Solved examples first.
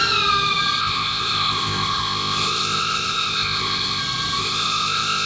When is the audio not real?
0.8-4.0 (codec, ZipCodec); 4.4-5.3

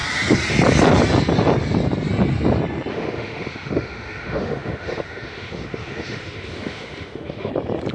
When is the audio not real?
2.9-7.5 (autoencoder, DAC-VAE)

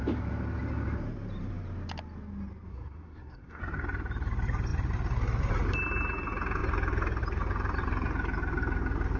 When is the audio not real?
2.7-3.6 (codec, SNAC)

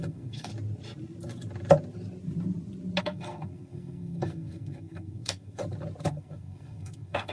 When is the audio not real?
0.0-0.5 (codec, SNAC); 3.0-5.6; 6.1-7.3

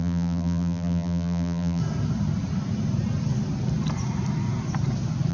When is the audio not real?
0.0-1.8 (vocoder, BigVGAN v2)

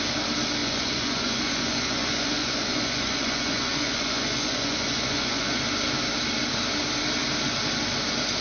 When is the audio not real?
0.6-5.6 (vocoder, Vocos)

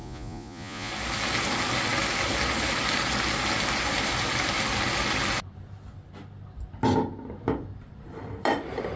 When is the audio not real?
0.0-0.9 (vocoder, Vocos)